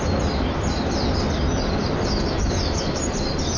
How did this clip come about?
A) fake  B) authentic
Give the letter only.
A